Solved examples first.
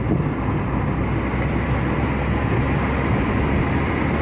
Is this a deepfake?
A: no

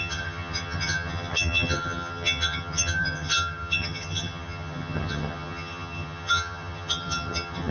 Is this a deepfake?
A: yes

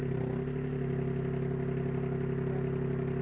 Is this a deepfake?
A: no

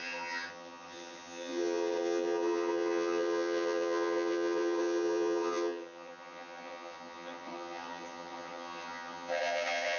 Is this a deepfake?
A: yes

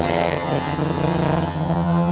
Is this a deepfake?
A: yes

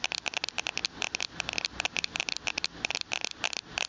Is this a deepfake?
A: no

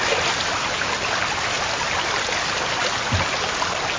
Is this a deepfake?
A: no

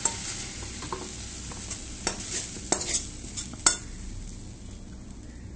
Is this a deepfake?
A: no